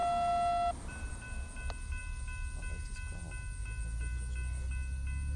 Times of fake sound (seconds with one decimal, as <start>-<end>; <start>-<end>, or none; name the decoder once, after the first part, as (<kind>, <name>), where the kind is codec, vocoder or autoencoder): none